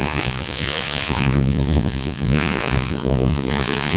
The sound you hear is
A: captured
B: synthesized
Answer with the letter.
B